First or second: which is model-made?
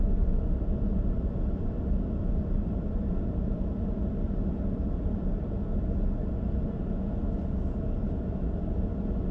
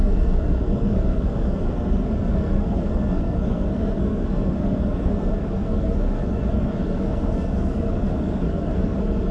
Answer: second